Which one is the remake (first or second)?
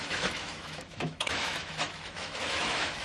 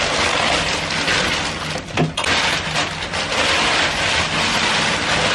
first